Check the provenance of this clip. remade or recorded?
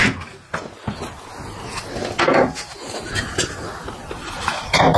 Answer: recorded